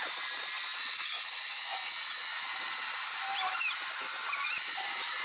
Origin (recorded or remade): recorded